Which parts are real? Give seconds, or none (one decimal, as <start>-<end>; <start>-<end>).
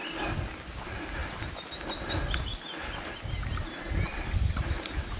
0.0-5.2